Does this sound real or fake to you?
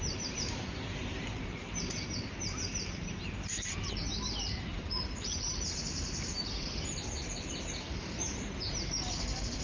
fake